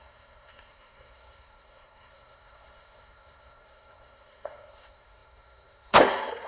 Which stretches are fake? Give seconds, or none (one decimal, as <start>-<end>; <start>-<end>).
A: 0.0-6.5